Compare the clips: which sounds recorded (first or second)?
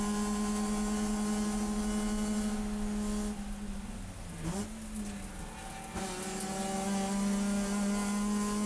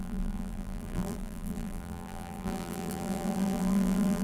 first